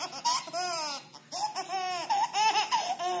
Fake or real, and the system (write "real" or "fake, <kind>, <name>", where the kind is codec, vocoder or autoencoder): real